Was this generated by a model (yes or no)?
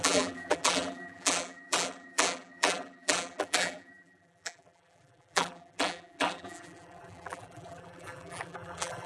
yes